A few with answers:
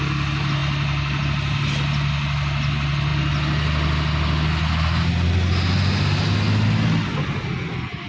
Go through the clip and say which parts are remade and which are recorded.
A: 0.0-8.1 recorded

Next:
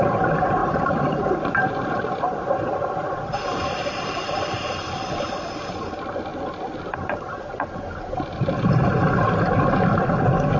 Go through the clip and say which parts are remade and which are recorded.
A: 0.0-0.6 recorded; 0.6-5.7 remade; 5.7-9.0 recorded; 9.0-9.7 remade; 9.7-10.6 recorded

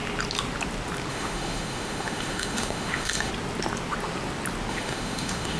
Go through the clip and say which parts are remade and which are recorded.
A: 0.0-1.1 recorded; 1.1-3.3 remade; 3.3-4.7 recorded; 4.7-5.6 remade